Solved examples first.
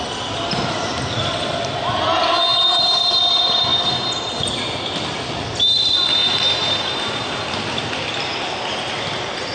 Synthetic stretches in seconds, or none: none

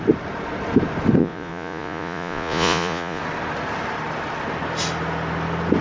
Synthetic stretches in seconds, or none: 1.2-3.2 (vocoder, Vocos)